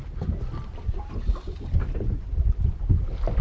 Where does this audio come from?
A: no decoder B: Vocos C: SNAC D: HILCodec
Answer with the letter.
A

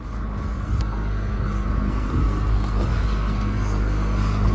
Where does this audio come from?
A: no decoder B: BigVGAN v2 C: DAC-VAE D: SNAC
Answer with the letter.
D